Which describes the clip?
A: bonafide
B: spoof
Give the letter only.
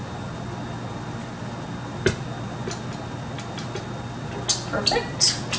A